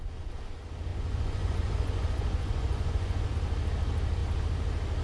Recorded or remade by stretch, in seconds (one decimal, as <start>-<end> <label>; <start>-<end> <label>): 0.0-0.9 recorded; 0.9-3.3 remade; 3.3-5.0 recorded